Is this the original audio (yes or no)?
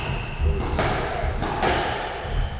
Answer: yes